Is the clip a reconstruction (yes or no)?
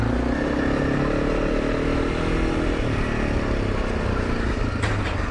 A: no